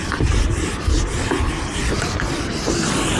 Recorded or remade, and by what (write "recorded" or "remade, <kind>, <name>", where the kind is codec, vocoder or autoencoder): recorded